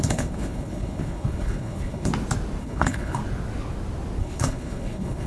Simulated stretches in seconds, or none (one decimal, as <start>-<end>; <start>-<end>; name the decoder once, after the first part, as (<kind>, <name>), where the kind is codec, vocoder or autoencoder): 0.0-2.1 (codec, HILCodec); 2.6-3.2; 4.2-5.3